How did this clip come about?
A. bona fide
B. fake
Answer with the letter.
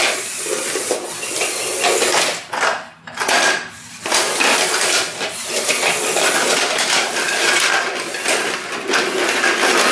A